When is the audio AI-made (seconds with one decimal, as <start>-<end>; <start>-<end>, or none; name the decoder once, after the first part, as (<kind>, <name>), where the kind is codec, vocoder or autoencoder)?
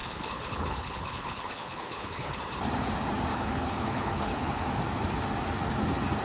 0.0-2.4 (codec, HILCodec); 3.3-4.7